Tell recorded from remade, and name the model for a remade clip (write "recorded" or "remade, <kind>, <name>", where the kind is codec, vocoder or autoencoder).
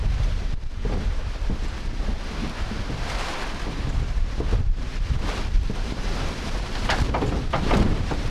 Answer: remade, vocoder, BigVGAN v2